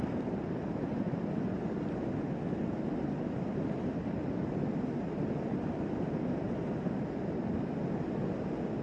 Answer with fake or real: real